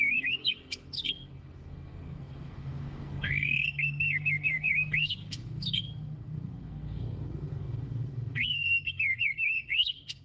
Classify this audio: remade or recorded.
remade